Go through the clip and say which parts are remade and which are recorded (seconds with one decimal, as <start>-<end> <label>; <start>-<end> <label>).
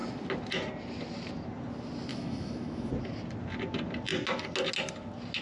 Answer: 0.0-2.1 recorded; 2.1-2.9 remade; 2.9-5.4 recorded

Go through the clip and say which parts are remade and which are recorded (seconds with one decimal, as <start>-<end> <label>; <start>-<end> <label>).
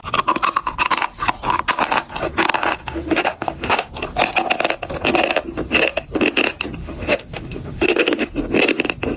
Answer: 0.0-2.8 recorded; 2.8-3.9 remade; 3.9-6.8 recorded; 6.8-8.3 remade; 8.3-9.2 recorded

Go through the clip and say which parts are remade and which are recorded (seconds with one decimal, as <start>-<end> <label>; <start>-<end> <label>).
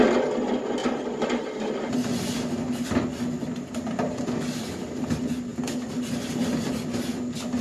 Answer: 0.0-7.6 recorded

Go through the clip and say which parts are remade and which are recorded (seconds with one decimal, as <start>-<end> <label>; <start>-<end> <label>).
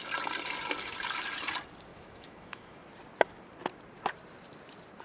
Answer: 0.0-1.9 recorded; 1.9-2.8 remade; 2.8-5.0 recorded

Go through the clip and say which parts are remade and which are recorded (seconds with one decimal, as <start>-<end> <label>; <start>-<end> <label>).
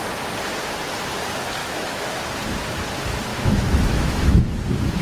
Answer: 0.0-1.6 recorded; 1.6-2.2 remade; 2.2-3.3 recorded; 3.3-4.4 remade; 4.4-5.0 recorded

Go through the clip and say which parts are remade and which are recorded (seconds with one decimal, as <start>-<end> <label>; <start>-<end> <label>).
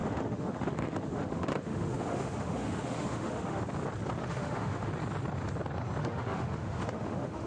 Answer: 0.0-3.6 remade; 3.6-4.2 recorded; 4.2-4.9 remade; 4.9-6.0 recorded; 6.0-7.5 remade